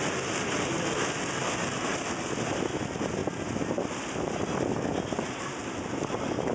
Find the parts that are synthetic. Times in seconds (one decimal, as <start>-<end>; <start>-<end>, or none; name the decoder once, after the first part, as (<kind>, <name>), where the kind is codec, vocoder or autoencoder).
none